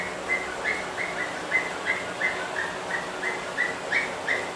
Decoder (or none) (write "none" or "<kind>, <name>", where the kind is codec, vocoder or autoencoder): none